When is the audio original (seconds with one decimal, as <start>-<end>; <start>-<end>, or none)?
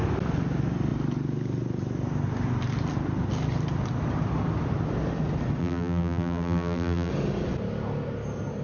0.0-5.6; 7.1-8.6